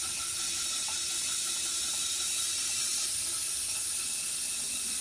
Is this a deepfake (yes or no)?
no